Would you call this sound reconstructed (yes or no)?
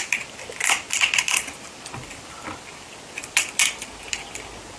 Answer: no